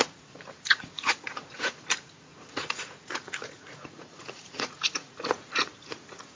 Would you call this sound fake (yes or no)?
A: yes